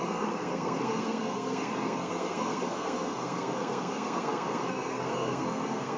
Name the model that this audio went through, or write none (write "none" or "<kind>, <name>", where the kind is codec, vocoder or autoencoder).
codec, SNAC